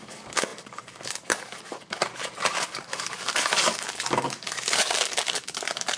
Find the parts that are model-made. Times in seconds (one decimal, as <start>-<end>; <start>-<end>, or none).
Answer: 0.0-2.0; 2.5-6.0